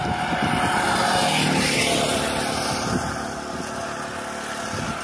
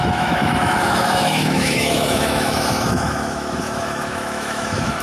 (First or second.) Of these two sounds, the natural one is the first